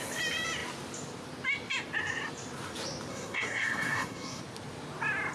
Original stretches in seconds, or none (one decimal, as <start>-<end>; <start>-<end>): 0.0-3.1; 4.4-5.3